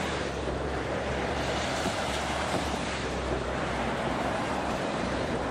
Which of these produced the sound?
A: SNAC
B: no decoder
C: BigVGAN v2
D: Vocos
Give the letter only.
C